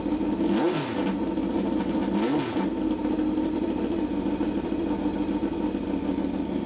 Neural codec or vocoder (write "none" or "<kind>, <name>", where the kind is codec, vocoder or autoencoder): none